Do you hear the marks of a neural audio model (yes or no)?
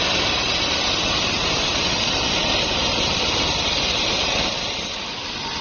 no